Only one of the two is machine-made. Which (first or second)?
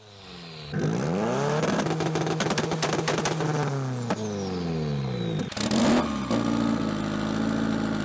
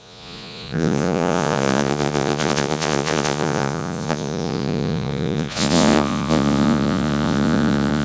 second